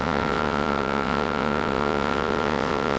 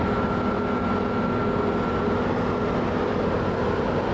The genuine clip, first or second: second